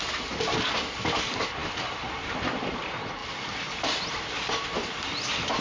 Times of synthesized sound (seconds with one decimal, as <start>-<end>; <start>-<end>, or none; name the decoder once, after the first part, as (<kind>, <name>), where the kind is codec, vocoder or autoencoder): 1.6-2.8 (vocoder, BigVGAN v2); 3.2-4.5